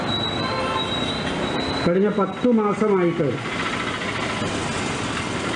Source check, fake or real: real